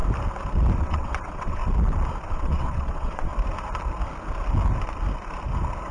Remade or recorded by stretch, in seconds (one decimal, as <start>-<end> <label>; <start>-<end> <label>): 0.0-0.8 recorded; 0.8-1.6 remade; 1.6-2.3 recorded; 2.3-3.3 remade; 3.3-5.9 recorded